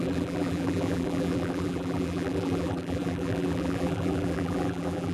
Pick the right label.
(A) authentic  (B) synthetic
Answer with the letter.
B